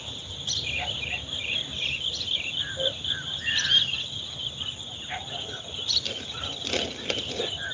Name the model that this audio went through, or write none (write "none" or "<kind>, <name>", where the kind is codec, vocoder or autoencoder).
none